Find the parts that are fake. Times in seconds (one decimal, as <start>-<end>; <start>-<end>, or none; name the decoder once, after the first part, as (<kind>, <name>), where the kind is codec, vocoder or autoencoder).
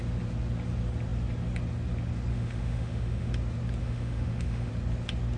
2.3-3.3 (autoencoder, DAC-VAE); 3.8-4.7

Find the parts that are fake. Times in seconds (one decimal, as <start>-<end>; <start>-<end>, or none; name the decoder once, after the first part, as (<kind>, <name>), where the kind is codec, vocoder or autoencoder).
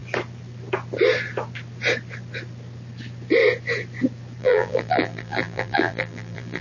4.4-6.6 (vocoder, BigVGAN v2)